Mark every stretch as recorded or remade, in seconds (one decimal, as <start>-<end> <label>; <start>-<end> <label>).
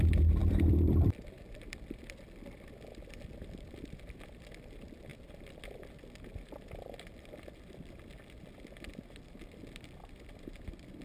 0.0-11.0 remade